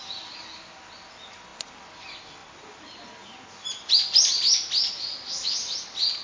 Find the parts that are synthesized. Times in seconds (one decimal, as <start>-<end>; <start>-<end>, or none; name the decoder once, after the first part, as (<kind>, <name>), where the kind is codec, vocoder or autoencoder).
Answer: none